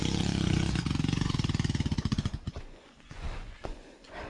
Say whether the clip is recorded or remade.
remade